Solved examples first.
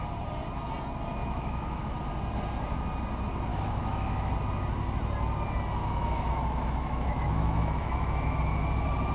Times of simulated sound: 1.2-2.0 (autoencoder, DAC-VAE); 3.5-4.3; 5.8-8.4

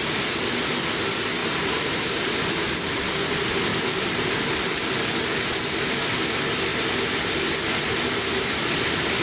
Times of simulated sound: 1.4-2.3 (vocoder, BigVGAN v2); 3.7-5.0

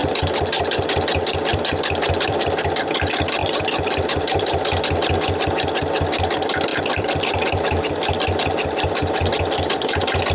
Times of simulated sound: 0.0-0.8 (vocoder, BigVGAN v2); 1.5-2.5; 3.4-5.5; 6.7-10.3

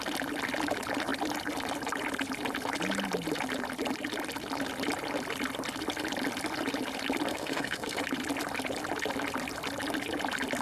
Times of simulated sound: 7.3-8.0 (codec, SNAC)

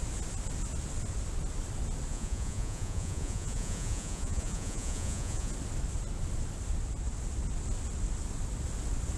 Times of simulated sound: 2.1-5.5 (vocoder, Vocos)